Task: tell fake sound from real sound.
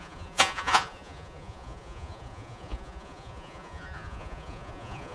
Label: fake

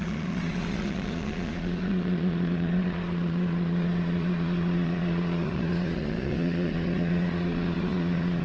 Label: fake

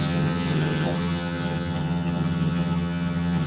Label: fake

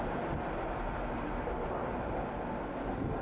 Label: real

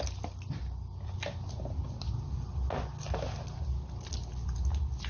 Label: real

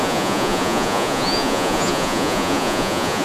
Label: fake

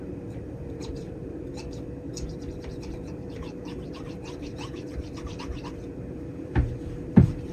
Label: fake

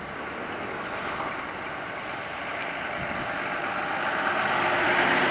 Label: real